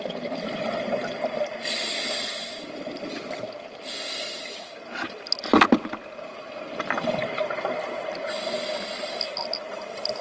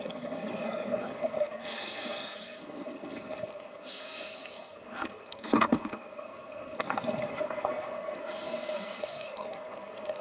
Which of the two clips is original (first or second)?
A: first